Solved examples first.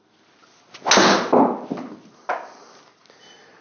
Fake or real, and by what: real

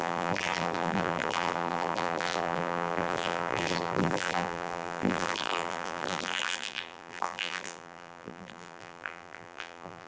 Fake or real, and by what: fake, vocoder, BigVGAN v2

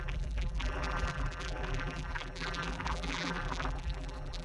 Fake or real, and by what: fake, vocoder, BigVGAN v2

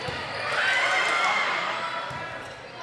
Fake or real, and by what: real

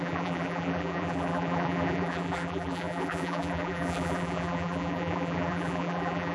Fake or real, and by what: fake, vocoder, BigVGAN v2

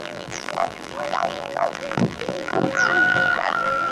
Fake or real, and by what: fake, vocoder, BigVGAN v2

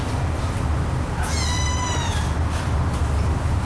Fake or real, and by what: real